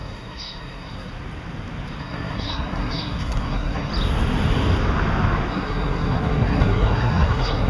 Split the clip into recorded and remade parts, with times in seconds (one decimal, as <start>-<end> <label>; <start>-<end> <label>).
0.0-1.1 remade; 1.1-2.0 recorded; 2.0-3.9 remade; 3.9-5.5 recorded; 5.5-7.7 remade